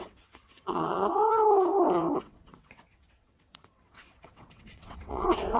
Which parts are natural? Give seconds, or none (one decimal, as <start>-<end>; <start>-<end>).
1.2-2.2